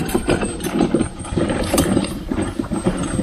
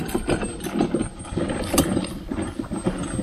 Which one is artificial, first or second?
first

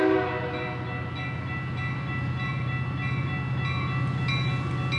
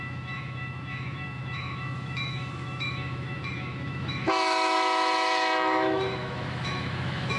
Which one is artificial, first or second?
second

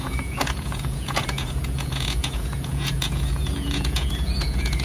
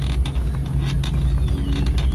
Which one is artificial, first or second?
first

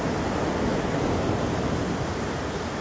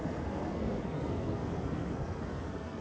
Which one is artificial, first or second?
second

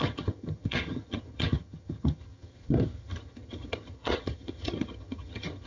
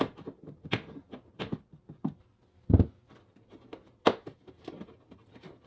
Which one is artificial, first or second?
first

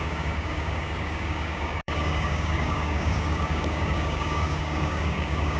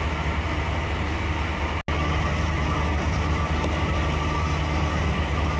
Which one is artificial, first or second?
first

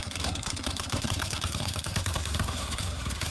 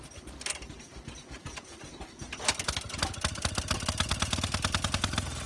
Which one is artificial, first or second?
first